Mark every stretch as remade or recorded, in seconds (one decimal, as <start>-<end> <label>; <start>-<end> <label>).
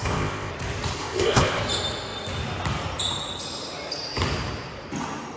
0.0-0.5 remade; 0.5-1.0 recorded; 1.0-1.6 remade; 1.6-5.4 recorded